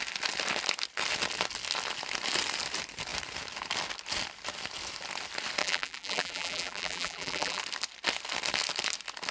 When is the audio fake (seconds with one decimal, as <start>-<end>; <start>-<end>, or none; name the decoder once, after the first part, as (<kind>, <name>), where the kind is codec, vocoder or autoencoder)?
5.6-7.6 (vocoder, BigVGAN v2)